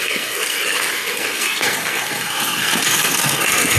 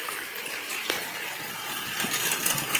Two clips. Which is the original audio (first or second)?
second